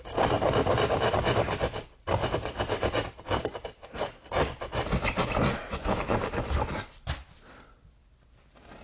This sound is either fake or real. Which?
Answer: real